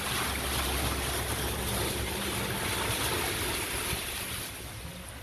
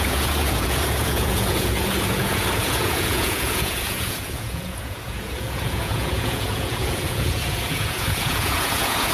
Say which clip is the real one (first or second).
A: first